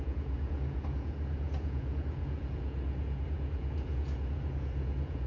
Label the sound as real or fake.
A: fake